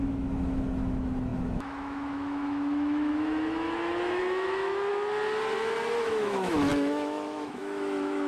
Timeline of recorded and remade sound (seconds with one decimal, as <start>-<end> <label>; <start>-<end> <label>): 0.0-4.9 remade; 4.9-6.0 recorded; 6.0-8.3 remade